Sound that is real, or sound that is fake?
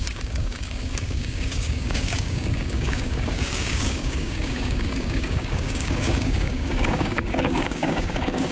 fake